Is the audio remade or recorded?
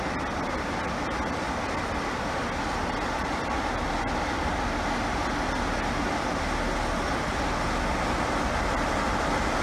recorded